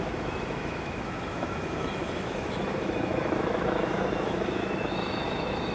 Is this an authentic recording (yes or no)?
no